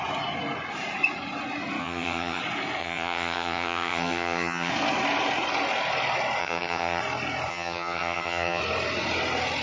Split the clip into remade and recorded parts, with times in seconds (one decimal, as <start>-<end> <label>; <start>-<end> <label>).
0.0-1.8 recorded; 1.8-2.4 remade; 2.4-2.8 recorded; 2.8-4.7 remade; 4.7-6.4 recorded; 6.4-7.0 remade; 7.0-7.5 recorded; 7.5-8.6 remade; 8.6-9.6 recorded